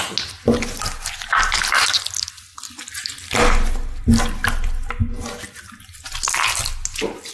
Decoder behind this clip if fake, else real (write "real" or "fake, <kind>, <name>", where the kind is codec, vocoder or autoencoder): real